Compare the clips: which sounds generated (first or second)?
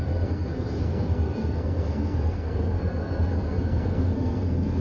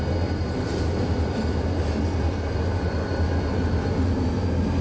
first